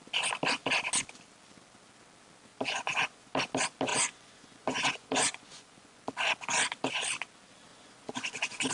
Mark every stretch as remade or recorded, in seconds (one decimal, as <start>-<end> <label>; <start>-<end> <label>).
0.0-2.5 recorded; 2.5-3.3 remade; 3.3-3.9 recorded; 3.9-6.0 remade; 6.0-7.7 recorded; 7.7-8.7 remade

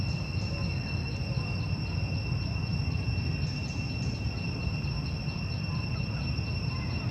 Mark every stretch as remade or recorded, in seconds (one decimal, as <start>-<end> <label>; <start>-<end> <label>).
0.0-7.1 recorded